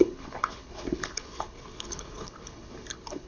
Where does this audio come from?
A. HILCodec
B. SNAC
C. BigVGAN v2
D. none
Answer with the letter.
A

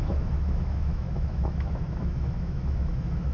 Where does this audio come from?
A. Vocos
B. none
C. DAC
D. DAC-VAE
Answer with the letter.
D